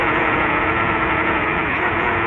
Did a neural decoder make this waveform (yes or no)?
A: yes